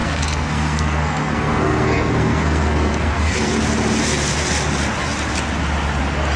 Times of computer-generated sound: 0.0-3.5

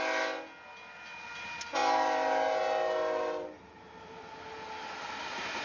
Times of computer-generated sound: none